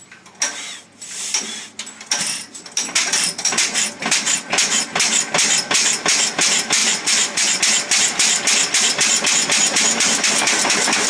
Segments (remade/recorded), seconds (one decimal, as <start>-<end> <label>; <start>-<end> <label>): 0.0-6.8 recorded; 6.8-7.6 remade; 7.6-11.1 recorded